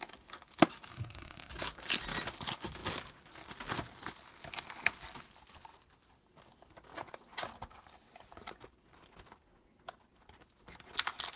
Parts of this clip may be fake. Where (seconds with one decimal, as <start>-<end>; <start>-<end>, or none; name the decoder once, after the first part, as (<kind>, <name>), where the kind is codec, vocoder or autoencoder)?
0.9-1.5 (codec, SNAC)